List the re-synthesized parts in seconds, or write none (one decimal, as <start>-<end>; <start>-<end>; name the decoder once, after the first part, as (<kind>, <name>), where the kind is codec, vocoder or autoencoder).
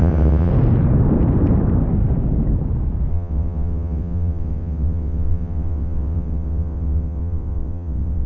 0.0-0.5 (vocoder, WaveNeXt); 3.1-8.3